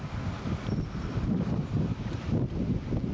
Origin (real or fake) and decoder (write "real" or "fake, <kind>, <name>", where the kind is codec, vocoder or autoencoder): real